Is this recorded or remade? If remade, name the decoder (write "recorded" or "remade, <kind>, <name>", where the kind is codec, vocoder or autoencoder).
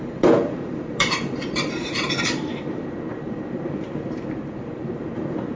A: remade, vocoder, BigVGAN v2